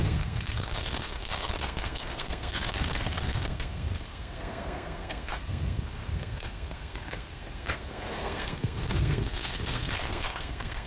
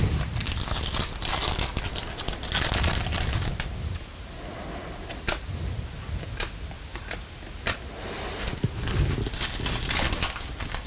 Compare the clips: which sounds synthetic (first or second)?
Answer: first